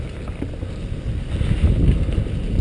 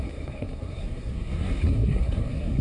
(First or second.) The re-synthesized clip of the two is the second